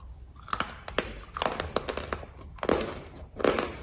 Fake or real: real